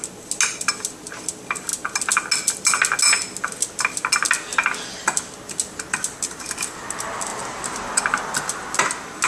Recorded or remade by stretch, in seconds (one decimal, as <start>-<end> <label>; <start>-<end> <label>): 0.0-9.3 recorded